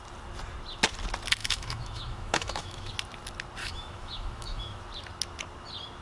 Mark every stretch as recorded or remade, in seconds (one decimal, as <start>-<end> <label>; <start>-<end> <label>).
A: 0.0-1.4 recorded; 1.4-2.9 remade; 2.9-3.6 recorded; 3.6-4.8 remade; 4.8-6.0 recorded